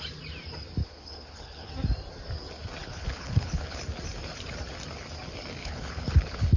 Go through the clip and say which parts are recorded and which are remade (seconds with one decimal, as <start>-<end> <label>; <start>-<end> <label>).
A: 0.0-0.8 recorded; 0.8-1.7 remade; 1.7-2.8 recorded; 2.8-3.8 remade; 3.8-5.6 recorded; 5.6-6.6 remade